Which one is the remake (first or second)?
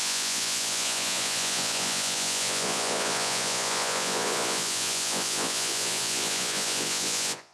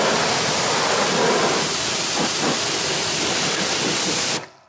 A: first